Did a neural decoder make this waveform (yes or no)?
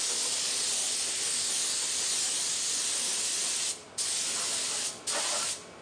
no